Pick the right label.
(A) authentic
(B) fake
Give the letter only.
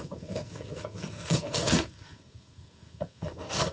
B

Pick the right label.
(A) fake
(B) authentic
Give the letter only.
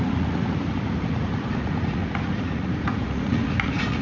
A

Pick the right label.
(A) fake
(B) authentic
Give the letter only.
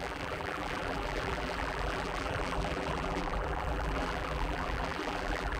A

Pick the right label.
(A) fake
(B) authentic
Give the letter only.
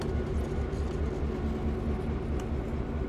B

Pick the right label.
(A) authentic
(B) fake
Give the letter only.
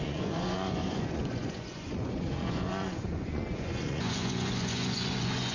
B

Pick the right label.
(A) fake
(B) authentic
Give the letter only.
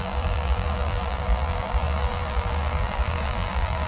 A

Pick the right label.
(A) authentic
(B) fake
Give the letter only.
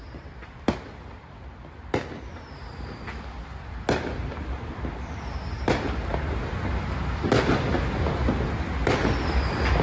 A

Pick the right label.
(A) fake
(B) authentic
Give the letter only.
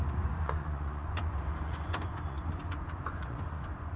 A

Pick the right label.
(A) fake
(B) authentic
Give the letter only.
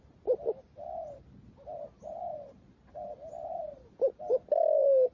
B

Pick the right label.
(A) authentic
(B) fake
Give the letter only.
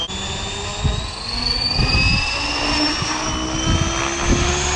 A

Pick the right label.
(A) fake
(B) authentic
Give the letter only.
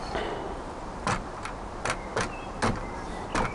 B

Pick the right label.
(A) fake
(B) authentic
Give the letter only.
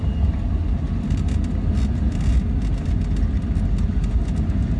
B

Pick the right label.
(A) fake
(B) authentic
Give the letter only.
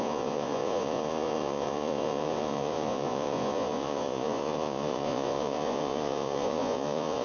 A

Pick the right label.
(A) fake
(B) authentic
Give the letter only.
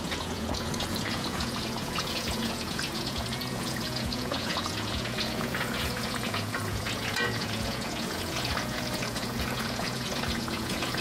A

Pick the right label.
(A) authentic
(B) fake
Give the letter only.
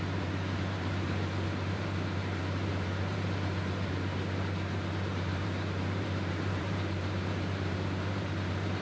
B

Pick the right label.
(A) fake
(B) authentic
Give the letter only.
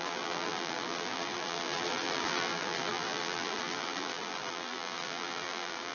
A